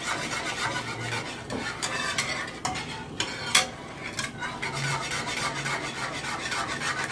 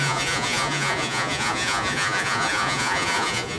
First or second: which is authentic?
first